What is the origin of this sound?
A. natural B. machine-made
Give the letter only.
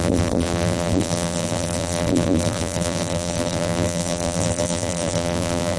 B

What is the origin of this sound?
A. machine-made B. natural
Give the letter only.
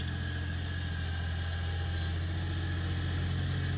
B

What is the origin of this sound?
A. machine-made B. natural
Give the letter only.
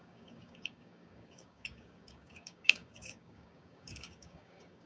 A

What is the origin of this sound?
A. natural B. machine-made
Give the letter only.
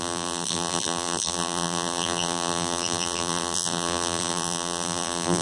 B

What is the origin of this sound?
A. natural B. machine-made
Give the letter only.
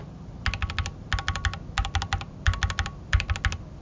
A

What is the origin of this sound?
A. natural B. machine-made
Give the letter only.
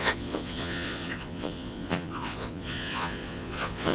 B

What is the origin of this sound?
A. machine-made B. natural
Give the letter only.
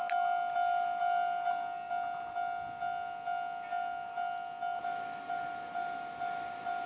B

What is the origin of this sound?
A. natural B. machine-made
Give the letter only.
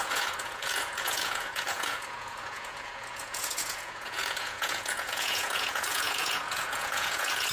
B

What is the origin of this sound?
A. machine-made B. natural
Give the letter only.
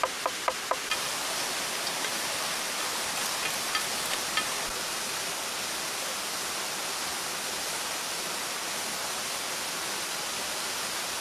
B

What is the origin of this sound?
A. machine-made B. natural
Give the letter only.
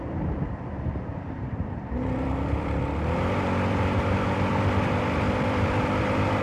A